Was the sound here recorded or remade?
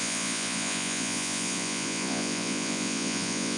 remade